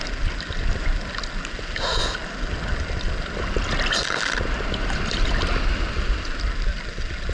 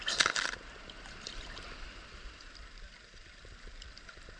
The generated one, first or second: second